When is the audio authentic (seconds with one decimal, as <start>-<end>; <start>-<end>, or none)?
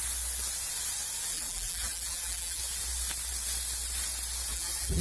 0.0-1.3; 2.6-4.5